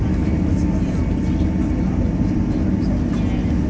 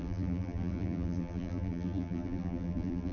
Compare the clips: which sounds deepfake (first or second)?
second